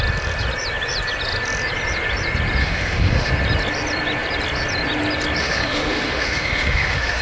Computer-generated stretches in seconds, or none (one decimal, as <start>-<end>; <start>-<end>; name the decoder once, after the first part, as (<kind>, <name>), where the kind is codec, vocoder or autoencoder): 2.6-3.3 (autoencoder, DAC-VAE); 5.4-7.2

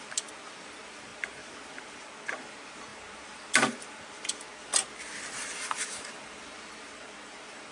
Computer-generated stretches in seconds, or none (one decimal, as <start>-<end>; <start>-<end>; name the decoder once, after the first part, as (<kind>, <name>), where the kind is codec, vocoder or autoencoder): 0.0-4.7 (vocoder, BigVGAN v2); 5.3-7.7